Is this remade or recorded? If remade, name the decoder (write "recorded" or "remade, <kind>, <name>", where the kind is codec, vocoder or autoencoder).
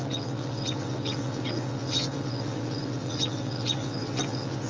remade, vocoder, WaveNeXt